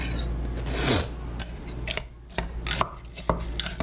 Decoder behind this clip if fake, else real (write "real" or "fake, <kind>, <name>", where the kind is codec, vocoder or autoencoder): real